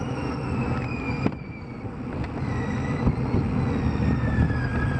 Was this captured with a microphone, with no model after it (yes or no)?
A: yes